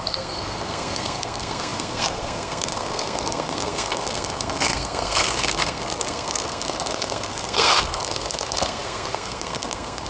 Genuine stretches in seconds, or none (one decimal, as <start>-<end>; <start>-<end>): none